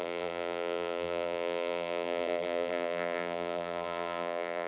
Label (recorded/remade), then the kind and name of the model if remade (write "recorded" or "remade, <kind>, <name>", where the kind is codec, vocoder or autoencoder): remade, vocoder, BigVGAN v2